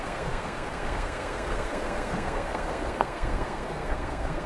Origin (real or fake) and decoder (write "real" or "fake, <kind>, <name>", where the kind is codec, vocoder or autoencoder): fake, codec, SNAC